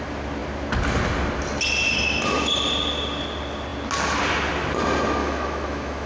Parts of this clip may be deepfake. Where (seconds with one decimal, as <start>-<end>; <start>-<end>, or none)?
5.2-6.1